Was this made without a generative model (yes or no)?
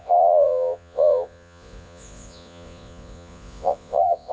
no